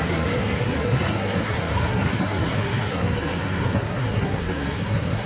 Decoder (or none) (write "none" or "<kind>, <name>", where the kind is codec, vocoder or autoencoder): codec, SNAC